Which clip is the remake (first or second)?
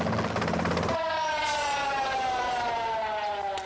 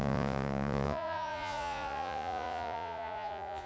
second